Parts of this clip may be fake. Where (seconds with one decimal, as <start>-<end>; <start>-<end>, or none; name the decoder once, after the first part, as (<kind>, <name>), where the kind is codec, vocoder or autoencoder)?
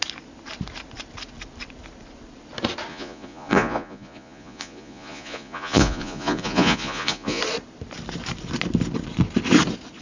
2.9-7.4 (vocoder, Vocos)